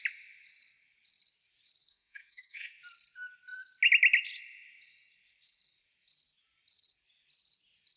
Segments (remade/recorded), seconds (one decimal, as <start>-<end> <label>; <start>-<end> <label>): 0.0-1.9 recorded; 1.9-2.7 remade; 2.7-8.0 recorded